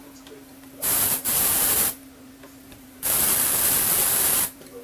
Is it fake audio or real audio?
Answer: fake